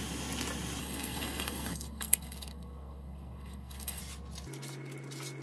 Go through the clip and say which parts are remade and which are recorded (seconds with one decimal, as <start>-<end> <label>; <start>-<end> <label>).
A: 0.0-0.8 recorded; 0.8-4.0 remade; 4.0-5.4 recorded